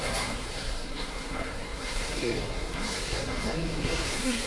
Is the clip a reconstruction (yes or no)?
yes